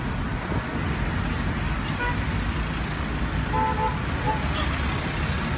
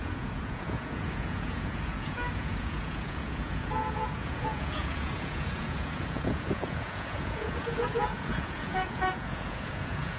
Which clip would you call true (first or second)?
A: first